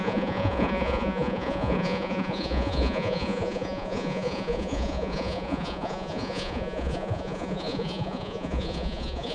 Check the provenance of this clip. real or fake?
fake